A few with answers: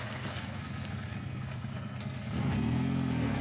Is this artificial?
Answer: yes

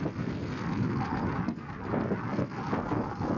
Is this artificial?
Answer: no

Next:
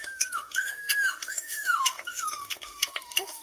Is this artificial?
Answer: yes